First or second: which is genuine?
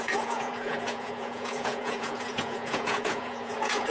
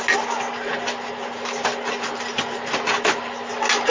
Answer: second